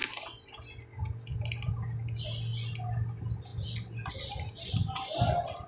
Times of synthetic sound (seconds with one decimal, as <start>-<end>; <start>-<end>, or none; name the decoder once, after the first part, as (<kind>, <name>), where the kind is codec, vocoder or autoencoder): none